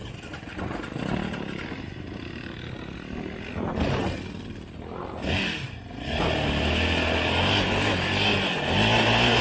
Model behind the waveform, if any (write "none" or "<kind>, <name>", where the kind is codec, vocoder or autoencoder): none